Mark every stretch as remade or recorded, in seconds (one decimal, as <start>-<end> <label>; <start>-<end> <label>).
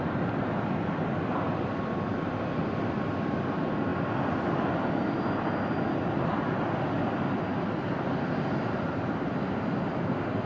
0.0-10.5 recorded